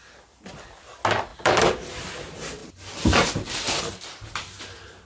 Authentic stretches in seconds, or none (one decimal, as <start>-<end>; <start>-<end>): 0.0-1.3; 2.1-5.1